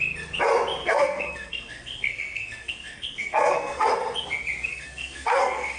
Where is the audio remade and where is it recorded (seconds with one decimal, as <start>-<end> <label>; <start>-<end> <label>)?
0.0-0.8 recorded; 0.8-3.9 remade; 3.9-4.7 recorded; 4.7-5.8 remade